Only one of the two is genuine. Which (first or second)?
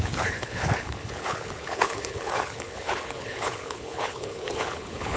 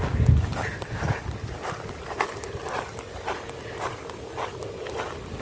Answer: second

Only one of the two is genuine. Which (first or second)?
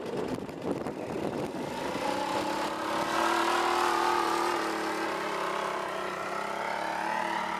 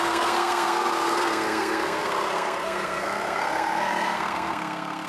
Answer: first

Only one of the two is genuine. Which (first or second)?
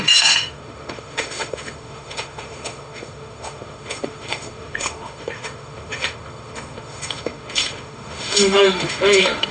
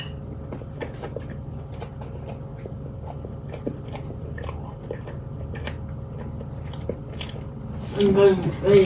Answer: second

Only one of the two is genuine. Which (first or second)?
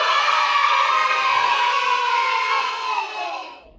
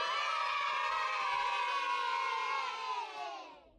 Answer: second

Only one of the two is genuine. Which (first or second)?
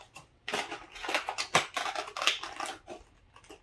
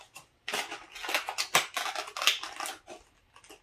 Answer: second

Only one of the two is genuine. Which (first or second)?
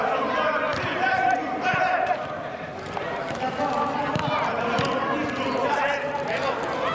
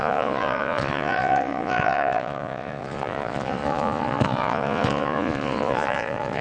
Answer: first